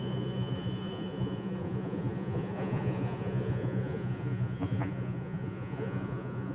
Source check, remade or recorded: remade